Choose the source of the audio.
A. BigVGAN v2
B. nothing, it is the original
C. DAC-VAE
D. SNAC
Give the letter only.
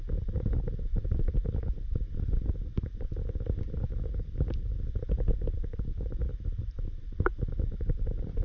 B